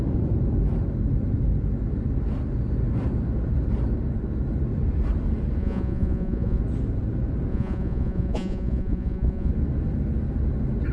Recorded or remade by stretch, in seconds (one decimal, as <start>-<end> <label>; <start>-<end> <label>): 0.0-5.6 recorded; 5.6-6.6 remade; 6.6-7.5 recorded; 7.5-9.5 remade; 9.5-10.9 recorded